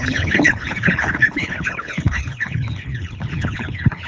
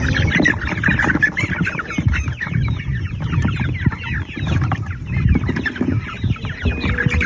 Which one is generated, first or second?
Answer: first